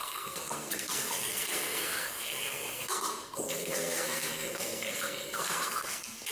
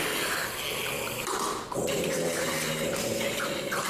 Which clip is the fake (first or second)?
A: first